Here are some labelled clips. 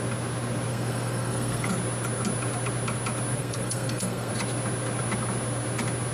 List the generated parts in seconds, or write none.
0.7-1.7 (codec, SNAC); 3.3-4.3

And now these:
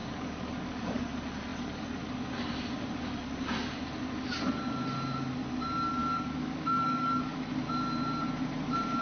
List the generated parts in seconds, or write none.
0.0-1.0 (codec, DAC); 6.0-7.4

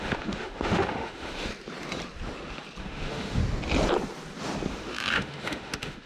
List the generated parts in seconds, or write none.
0.0-1.5 (autoencoder, DAC-VAE); 2.8-3.4; 4.7-6.1

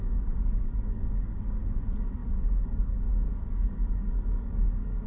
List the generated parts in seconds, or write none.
0.0-5.1 (codec, DAC)